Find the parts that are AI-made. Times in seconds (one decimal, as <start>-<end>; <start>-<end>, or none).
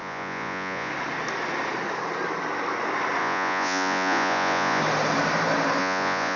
0.0-0.9; 3.2-4.8; 5.8-6.4